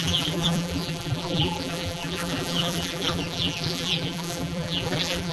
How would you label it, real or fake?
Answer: fake